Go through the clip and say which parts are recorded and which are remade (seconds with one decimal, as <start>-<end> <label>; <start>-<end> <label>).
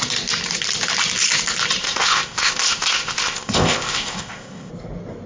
0.0-1.8 recorded; 1.8-4.7 remade; 4.7-5.3 recorded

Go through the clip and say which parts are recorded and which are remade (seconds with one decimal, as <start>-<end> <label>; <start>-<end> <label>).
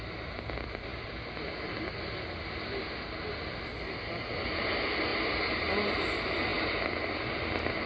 0.0-7.9 recorded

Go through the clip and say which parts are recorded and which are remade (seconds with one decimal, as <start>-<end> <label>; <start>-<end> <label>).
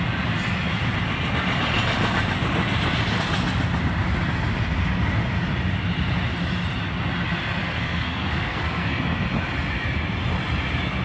0.0-7.6 recorded; 7.6-9.0 remade; 9.0-11.0 recorded